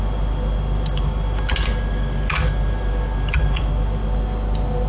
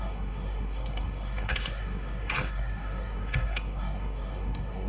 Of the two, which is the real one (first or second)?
first